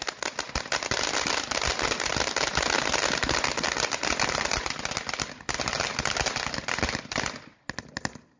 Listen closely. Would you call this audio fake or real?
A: real